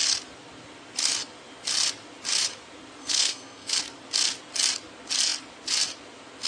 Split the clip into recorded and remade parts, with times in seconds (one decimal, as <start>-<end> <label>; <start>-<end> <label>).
0.0-3.0 recorded; 3.0-3.8 remade; 3.8-6.5 recorded

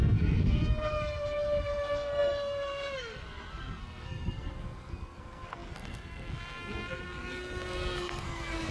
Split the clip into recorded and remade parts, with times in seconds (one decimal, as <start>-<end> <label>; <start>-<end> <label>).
0.0-8.7 remade

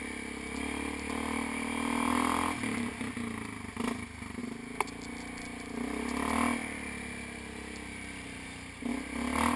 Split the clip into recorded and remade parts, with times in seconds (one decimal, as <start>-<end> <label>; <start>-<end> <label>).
0.0-9.6 recorded

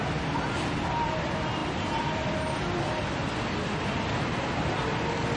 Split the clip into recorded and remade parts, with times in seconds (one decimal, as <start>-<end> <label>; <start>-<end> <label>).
0.0-5.4 recorded

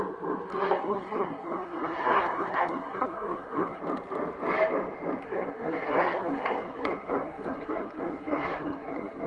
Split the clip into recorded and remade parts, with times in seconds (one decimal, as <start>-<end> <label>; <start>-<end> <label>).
0.0-0.5 recorded; 0.5-3.8 remade; 3.8-5.2 recorded; 5.2-9.3 remade